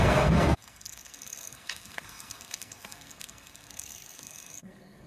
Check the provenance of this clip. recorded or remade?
remade